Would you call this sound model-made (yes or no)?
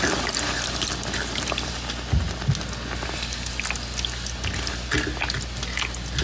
no